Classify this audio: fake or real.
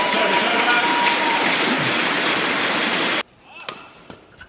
fake